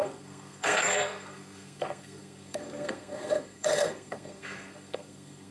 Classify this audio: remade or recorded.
remade